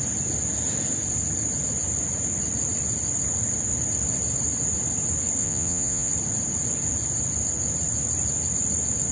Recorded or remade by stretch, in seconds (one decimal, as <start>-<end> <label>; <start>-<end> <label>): 0.0-5.4 recorded; 5.4-6.1 remade; 6.1-9.1 recorded